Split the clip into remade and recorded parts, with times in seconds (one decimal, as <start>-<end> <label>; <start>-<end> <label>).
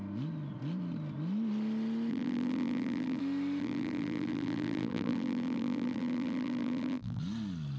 0.0-2.1 recorded; 2.1-3.2 remade; 3.2-3.6 recorded; 3.6-7.2 remade; 7.2-7.8 recorded